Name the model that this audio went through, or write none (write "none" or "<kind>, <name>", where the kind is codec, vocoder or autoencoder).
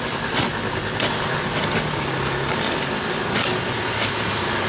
none